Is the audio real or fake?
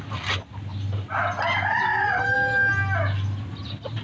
real